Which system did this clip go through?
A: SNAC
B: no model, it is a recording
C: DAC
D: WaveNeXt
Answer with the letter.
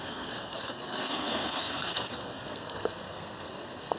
A